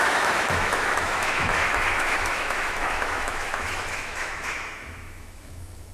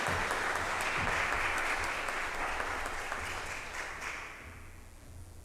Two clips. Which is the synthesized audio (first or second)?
first